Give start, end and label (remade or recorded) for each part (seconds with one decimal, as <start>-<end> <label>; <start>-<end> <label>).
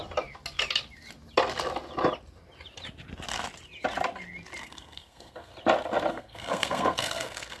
0.0-4.6 recorded; 4.6-5.5 remade; 5.5-6.1 recorded; 6.1-7.6 remade